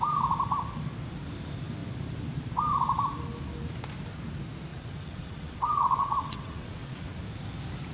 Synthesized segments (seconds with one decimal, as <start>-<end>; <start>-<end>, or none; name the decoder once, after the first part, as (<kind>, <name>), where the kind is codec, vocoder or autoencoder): 4.7-7.2 (vocoder, WaveNeXt)